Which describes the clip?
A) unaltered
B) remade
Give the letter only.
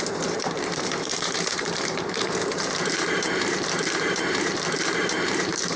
B